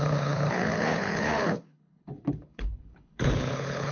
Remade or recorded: remade